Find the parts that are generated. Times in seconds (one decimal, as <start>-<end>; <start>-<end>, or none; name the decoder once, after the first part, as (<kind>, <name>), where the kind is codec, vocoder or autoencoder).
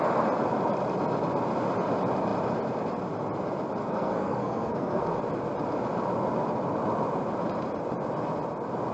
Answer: 3.8-5.2 (codec, SNAC)